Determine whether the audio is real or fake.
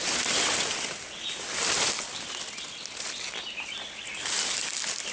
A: real